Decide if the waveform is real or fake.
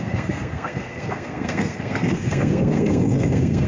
fake